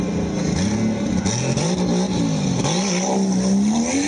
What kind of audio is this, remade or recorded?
recorded